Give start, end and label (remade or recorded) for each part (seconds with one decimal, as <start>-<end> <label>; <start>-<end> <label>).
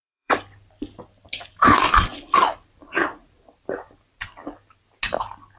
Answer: 0.0-0.8 remade; 0.8-5.6 recorded